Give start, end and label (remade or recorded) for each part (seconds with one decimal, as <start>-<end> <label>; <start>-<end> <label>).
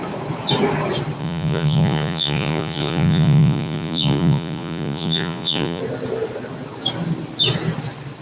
0.0-1.2 recorded; 1.2-5.8 remade; 5.8-8.2 recorded